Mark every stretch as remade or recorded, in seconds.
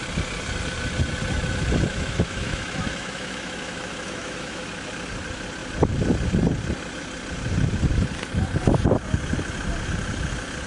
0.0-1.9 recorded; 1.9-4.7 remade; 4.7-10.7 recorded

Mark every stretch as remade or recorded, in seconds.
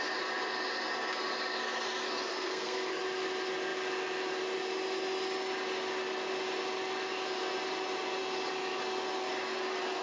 0.0-2.3 recorded; 2.3-3.0 remade; 3.0-10.0 recorded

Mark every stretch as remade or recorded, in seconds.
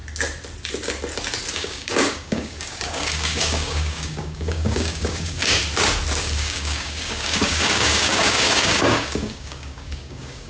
0.0-1.5 recorded; 1.5-5.6 remade; 5.6-6.2 recorded; 6.2-10.5 remade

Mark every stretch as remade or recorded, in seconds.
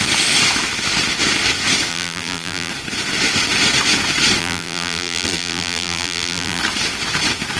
0.0-1.9 recorded; 1.9-2.7 remade; 2.7-4.4 recorded; 4.4-6.6 remade; 6.6-7.6 recorded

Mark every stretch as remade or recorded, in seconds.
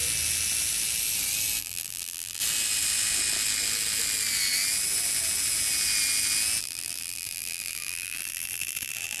0.0-1.6 recorded; 1.6-2.4 remade; 2.4-6.6 recorded; 6.6-9.2 remade